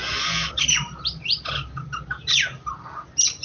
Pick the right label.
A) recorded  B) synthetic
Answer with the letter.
A